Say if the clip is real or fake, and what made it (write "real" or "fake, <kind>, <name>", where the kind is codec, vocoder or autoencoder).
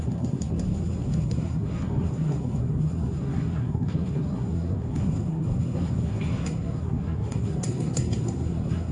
fake, codec, SNAC